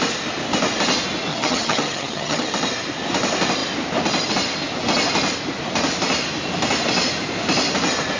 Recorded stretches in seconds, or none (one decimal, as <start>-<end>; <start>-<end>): 0.0-1.3; 2.5-8.2

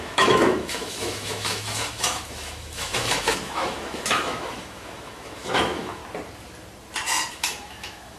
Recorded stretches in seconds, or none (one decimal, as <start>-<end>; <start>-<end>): 6.0-7.3

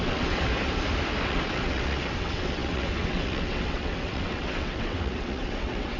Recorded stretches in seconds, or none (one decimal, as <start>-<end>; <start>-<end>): 0.5-1.2